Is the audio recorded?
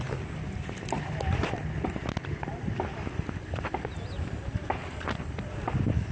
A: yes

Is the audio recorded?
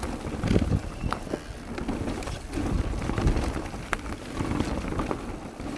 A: yes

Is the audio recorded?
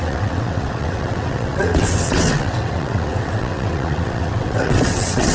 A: no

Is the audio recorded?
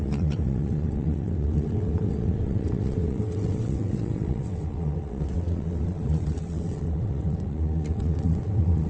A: no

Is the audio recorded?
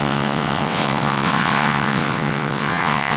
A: no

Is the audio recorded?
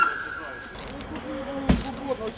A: yes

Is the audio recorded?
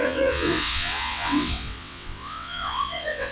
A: no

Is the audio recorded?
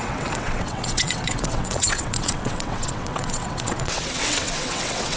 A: no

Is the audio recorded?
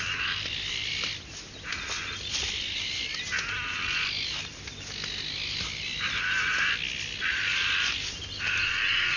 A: yes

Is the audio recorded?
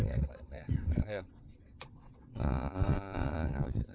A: no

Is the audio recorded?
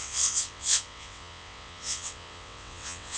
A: no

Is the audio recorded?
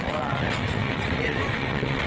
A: no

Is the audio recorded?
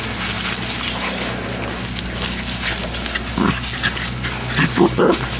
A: yes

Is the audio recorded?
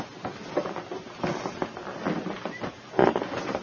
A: yes